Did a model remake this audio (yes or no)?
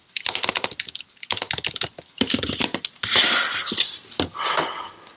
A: no